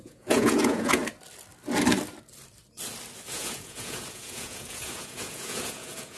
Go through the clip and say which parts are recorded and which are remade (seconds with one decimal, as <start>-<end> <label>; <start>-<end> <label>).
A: 0.0-1.0 remade; 1.0-3.3 recorded; 3.3-6.2 remade